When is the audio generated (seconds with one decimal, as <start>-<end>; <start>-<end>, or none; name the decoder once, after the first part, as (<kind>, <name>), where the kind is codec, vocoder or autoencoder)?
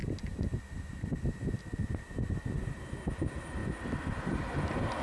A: none